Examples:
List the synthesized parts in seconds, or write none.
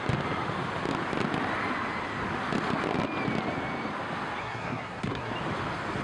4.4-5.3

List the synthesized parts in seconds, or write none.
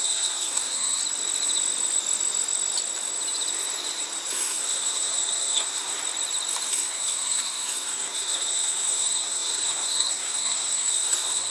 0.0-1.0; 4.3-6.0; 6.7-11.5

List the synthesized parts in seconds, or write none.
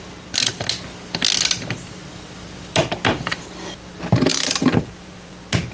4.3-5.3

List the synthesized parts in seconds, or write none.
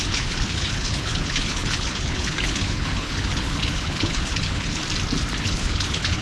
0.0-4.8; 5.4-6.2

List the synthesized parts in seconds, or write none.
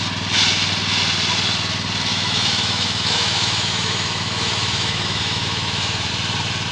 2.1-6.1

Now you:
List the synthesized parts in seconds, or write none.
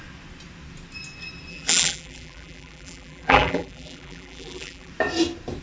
1.5-4.9